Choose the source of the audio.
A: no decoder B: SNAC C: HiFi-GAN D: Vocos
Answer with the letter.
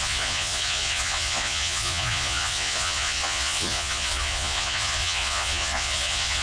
D